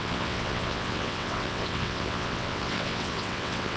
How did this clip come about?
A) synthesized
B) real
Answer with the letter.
A